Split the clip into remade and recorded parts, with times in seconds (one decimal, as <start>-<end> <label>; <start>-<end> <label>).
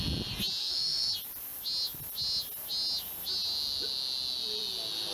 0.0-0.6 recorded; 0.6-1.1 remade; 1.1-5.1 recorded